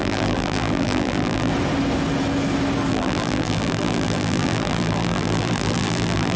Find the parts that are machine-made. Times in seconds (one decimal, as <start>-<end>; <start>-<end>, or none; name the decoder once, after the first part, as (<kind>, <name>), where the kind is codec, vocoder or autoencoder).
0.0-1.5 (vocoder, BigVGAN v2); 2.9-6.4

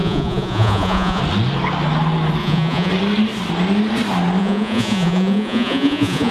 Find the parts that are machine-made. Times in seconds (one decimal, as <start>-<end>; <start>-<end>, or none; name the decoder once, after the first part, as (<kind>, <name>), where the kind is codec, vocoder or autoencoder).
0.0-1.2 (vocoder, Vocos); 2.4-2.9; 4.4-6.3

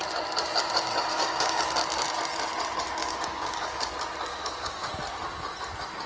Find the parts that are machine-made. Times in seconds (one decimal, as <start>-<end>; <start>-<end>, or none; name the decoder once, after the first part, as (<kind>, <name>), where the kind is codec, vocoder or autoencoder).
1.1-1.6 (codec, DAC); 3.0-3.9; 4.3-4.9

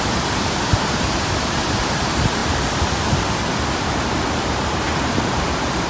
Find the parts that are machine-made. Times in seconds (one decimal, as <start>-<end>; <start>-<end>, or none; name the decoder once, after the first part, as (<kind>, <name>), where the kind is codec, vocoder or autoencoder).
0.0-2.4 (vocoder, BigVGAN v2); 4.5-5.9

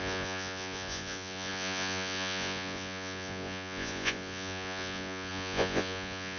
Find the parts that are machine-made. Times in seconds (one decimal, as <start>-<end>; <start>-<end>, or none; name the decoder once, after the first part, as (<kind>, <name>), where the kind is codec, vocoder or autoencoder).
0.0-6.4 (vocoder, Vocos)